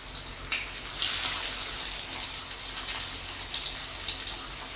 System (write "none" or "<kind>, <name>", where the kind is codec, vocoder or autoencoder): none